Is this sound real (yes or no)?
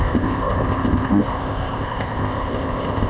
no